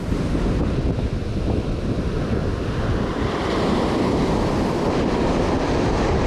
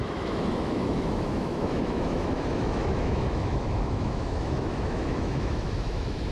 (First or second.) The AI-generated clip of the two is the second